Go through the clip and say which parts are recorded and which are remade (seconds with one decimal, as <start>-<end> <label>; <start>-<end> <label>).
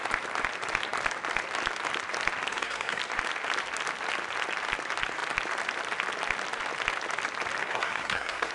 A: 0.0-2.5 recorded; 2.5-3.0 remade; 3.0-7.6 recorded; 7.6-8.5 remade